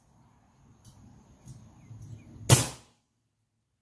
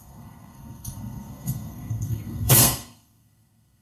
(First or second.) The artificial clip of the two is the second